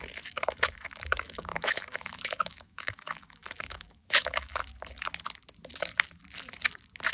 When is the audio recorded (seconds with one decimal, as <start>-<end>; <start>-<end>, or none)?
4.6-7.1